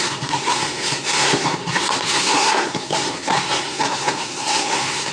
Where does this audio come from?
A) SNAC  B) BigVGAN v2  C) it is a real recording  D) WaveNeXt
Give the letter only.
A